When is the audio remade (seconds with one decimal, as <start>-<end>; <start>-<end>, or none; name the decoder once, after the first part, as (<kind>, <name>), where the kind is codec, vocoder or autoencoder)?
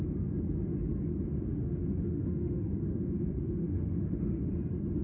1.5-4.5 (autoencoder, DAC-VAE)